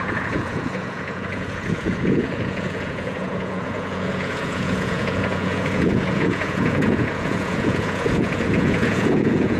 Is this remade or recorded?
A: remade